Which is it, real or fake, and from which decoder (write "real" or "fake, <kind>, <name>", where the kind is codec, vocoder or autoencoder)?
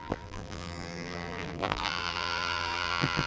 fake, vocoder, BigVGAN v2